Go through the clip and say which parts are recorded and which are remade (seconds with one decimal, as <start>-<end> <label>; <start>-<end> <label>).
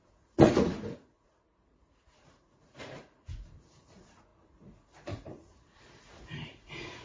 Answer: 0.0-7.0 remade